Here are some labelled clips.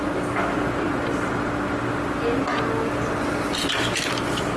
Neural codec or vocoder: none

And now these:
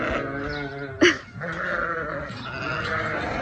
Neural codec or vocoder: none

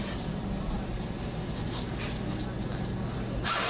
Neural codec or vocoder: none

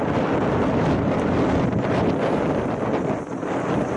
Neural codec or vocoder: none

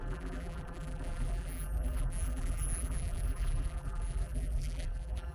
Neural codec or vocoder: vocoder, BigVGAN v2